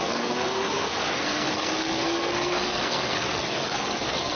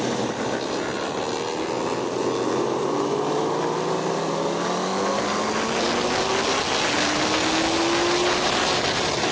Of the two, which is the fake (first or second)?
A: first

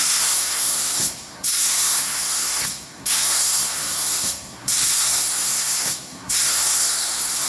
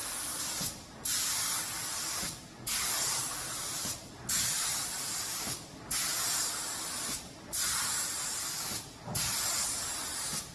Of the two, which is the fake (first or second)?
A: first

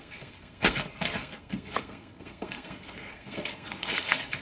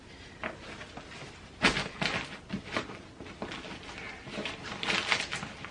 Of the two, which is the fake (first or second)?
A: first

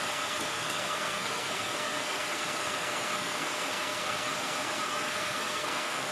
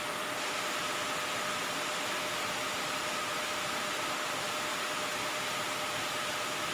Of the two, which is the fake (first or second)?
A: first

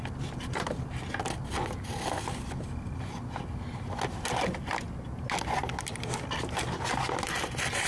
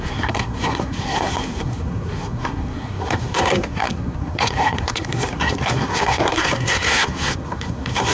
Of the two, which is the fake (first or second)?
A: second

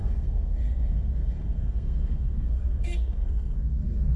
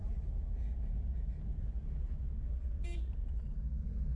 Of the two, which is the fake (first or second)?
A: first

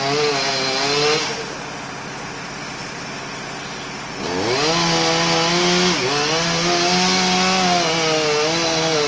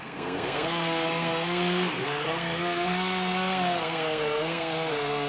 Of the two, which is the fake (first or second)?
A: second